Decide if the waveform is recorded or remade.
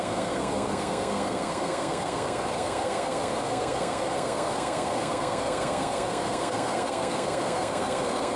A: remade